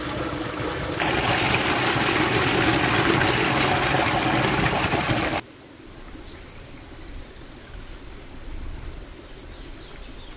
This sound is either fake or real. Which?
real